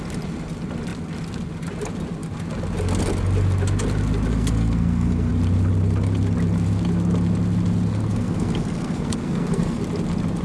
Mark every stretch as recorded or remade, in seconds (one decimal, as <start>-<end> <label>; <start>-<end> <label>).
0.0-4.3 recorded; 4.3-5.3 remade; 5.3-7.9 recorded; 7.9-9.8 remade; 9.8-10.4 recorded